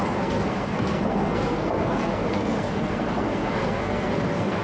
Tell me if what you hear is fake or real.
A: fake